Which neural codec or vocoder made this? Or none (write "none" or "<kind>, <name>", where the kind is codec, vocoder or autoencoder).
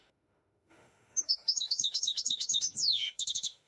autoencoder, DAC-VAE